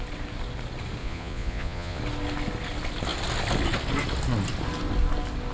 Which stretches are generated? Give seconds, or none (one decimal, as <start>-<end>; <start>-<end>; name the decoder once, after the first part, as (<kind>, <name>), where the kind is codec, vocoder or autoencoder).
1.0-2.0 (vocoder, Vocos)